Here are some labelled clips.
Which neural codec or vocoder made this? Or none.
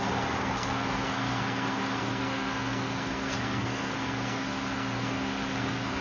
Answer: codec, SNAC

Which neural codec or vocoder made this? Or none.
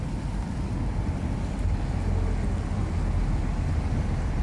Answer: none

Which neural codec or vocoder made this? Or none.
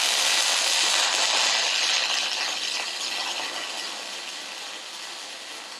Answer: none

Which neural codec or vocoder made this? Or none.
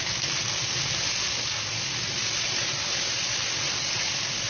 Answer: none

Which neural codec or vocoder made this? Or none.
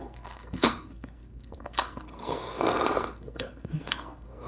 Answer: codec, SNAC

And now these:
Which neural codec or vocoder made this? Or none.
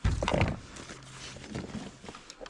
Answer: none